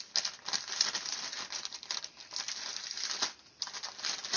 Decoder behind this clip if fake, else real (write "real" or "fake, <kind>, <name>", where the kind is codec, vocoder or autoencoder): real